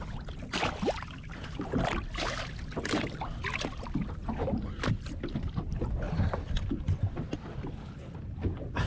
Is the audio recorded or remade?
recorded